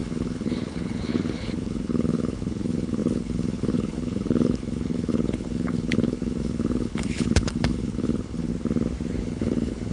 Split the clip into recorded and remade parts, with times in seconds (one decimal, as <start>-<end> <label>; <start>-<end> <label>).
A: 0.0-8.5 remade; 8.5-9.2 recorded; 9.2-9.9 remade